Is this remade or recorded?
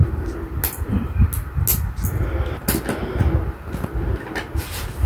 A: recorded